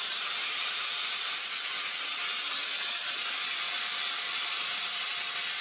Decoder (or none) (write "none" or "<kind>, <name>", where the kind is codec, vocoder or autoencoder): vocoder, BigVGAN v2